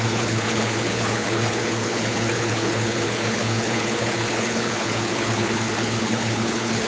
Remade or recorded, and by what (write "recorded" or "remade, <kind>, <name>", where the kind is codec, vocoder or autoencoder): remade, codec, HILCodec